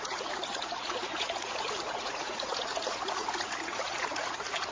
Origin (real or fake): fake